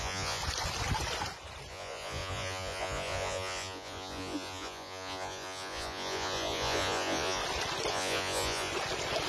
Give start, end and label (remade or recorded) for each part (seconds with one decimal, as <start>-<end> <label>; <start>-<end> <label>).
0.0-0.4 remade; 0.4-1.7 recorded; 1.7-7.4 remade; 7.4-7.9 recorded; 7.9-8.7 remade; 8.7-9.3 recorded